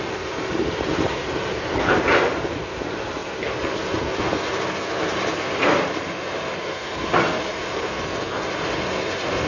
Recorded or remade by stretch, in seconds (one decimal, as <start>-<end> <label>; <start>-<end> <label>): 0.0-9.5 recorded